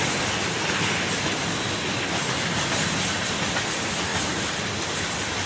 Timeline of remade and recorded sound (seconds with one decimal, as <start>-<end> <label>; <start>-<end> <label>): 0.0-5.5 recorded